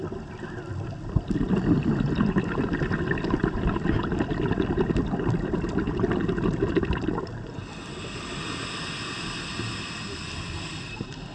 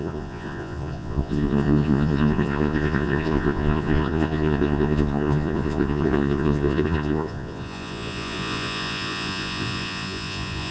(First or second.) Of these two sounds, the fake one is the second